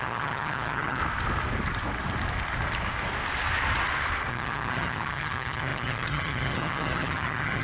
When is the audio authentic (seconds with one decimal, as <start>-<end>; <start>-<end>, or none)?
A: 1.0-4.3